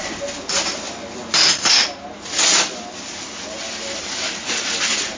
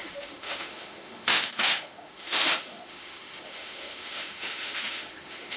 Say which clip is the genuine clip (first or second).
first